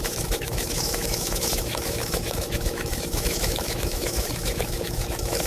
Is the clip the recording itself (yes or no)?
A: no